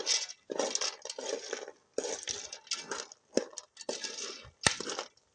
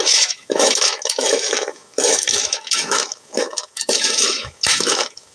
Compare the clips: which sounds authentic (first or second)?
first